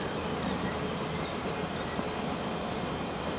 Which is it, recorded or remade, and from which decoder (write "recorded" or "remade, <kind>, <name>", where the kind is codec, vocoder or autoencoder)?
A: recorded